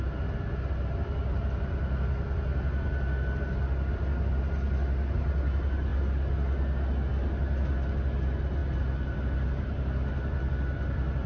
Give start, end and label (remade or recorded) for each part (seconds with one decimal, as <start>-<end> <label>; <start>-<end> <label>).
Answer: 0.0-11.3 recorded